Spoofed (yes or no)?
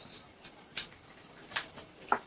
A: no